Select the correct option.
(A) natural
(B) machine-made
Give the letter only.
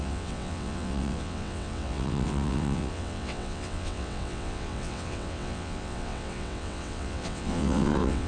B